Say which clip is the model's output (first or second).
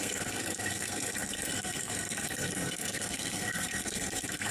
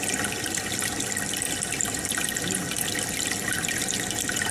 first